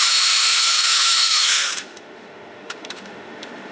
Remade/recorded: remade